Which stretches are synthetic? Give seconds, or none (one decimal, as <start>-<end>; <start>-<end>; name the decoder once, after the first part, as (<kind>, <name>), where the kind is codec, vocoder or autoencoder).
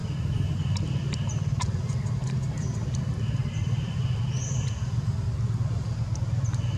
none